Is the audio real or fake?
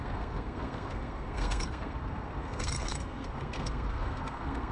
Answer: fake